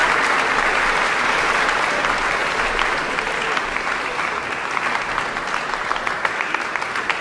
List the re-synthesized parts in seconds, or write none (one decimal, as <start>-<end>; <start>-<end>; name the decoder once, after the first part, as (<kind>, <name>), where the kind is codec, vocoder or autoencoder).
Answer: none

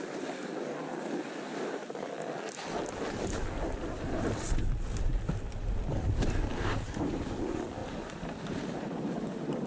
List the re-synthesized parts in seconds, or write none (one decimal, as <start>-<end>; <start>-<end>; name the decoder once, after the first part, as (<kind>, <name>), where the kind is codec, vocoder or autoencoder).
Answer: 1.5-2.1 (vocoder, BigVGAN v2); 6.5-7.3; 7.8-9.1